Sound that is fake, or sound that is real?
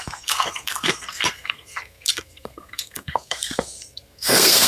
fake